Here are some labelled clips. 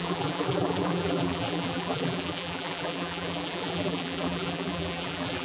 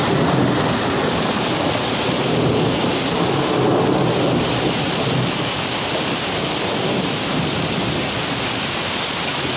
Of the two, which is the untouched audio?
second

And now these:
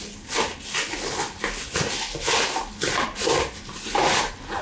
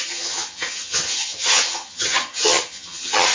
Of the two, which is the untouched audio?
first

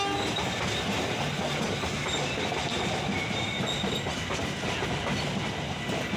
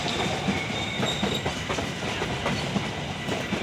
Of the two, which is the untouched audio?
first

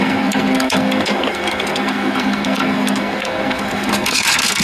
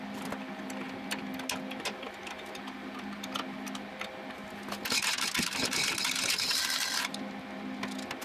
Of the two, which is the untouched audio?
second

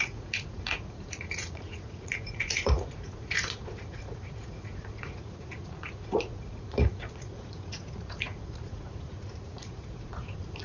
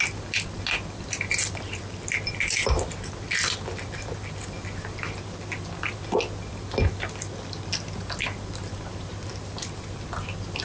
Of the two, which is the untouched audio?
second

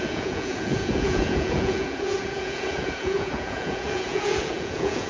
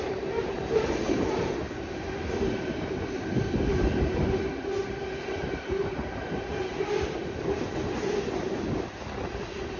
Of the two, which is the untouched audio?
second